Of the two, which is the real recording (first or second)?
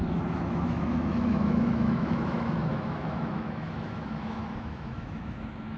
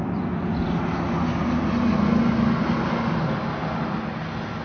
second